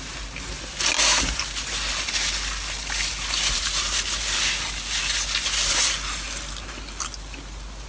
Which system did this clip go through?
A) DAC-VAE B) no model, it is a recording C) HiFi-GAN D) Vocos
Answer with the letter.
B